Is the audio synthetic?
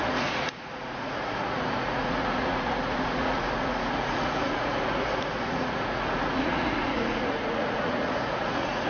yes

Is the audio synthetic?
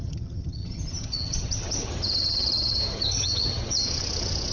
yes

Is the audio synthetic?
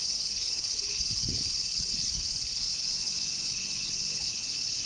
yes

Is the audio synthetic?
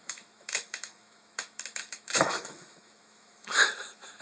yes